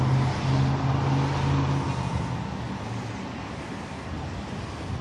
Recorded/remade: recorded